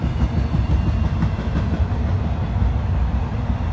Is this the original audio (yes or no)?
yes